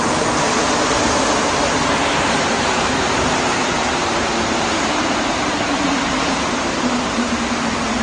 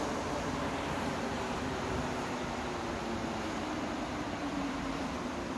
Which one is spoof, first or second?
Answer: first